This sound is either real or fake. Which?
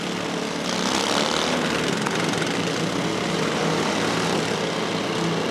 real